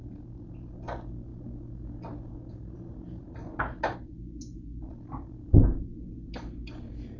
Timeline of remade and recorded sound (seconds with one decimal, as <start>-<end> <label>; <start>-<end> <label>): 0.0-7.2 recorded